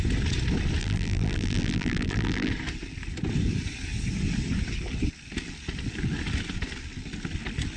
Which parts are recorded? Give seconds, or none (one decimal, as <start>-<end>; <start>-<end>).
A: 0.0-0.8; 2.5-7.8